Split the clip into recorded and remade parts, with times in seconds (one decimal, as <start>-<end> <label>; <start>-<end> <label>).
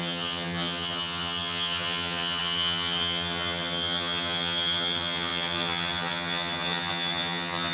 0.0-7.7 remade